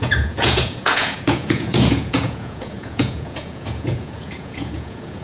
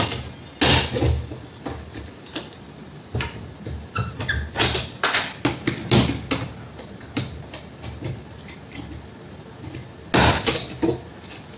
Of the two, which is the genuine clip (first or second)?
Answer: second